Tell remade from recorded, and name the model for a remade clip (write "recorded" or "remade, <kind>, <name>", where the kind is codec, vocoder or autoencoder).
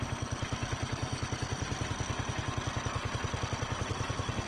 recorded